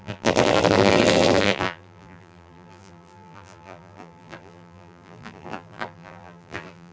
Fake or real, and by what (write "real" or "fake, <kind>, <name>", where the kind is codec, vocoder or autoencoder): fake, vocoder, BigVGAN v2